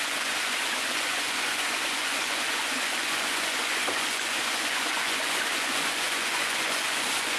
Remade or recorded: remade